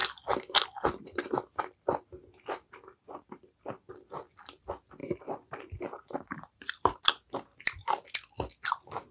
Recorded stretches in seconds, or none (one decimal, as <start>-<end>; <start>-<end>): 0.0-5.0; 7.0-9.1